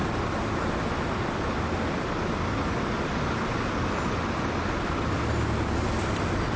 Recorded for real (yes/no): yes